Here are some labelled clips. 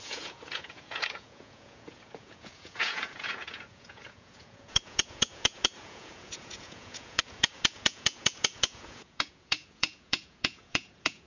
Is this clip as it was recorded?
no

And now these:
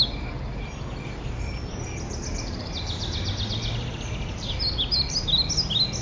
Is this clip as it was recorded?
yes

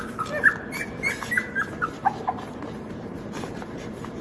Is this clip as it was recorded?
no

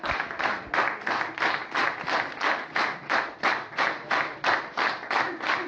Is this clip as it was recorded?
yes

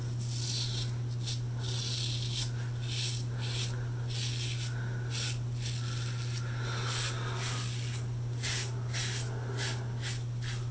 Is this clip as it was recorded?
yes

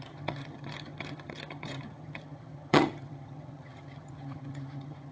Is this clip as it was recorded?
no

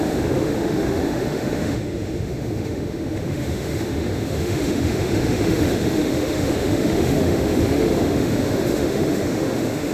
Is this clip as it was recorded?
no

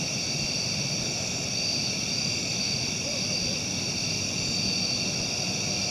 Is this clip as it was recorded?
yes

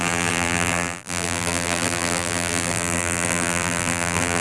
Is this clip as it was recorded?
no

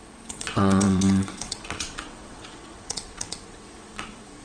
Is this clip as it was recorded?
no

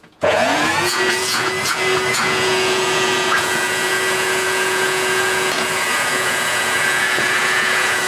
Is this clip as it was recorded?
no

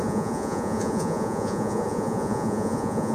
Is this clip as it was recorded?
no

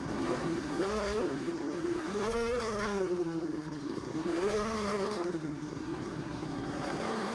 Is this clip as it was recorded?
no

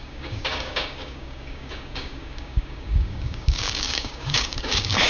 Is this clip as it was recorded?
no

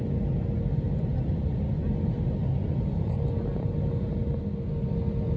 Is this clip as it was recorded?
yes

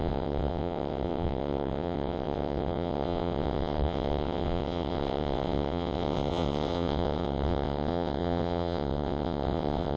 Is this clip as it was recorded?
no